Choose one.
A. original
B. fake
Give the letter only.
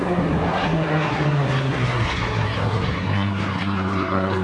B